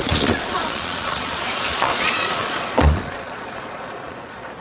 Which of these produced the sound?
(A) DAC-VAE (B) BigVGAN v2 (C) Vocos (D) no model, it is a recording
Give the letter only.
C